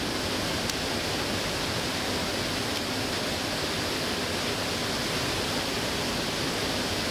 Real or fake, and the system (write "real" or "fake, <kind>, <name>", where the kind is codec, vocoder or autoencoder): real